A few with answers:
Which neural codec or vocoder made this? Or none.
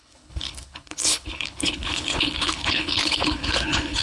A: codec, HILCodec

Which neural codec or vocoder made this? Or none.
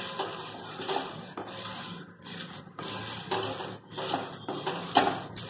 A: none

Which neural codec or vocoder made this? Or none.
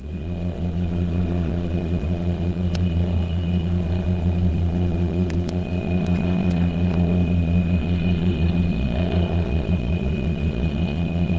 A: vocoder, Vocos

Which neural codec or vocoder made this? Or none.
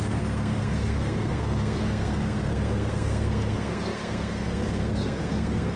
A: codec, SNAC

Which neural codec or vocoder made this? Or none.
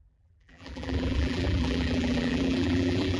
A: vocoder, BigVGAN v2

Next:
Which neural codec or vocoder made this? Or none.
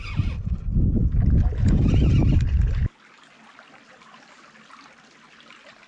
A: none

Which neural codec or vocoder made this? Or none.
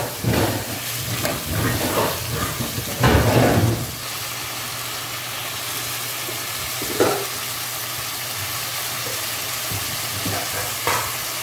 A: none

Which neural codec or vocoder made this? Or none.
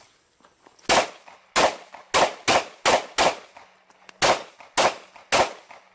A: none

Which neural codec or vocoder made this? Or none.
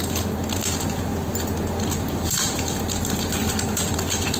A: none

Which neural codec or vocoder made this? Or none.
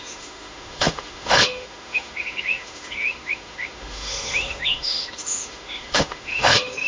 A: autoencoder, DAC-VAE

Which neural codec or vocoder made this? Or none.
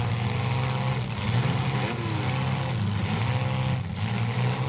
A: none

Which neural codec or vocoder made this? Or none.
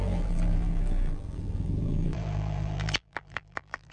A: vocoder, BigVGAN v2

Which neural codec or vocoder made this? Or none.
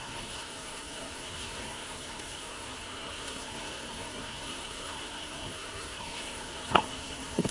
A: codec, SNAC